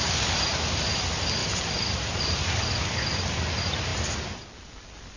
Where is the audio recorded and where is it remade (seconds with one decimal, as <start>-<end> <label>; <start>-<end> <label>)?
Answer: 0.0-1.4 recorded; 1.4-2.6 remade; 2.6-5.2 recorded